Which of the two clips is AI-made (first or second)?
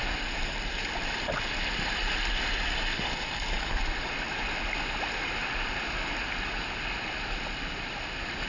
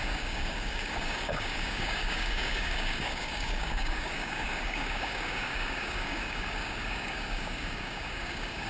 second